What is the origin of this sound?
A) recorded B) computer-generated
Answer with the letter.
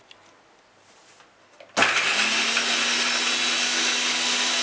A